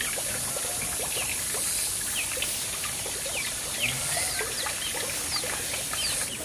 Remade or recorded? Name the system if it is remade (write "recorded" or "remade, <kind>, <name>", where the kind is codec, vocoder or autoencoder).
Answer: recorded